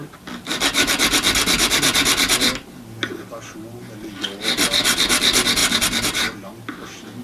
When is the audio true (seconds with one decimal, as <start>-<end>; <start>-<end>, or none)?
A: 0.0-7.2